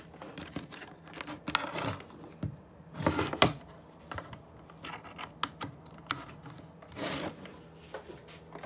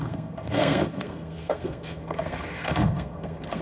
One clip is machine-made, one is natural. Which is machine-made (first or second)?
second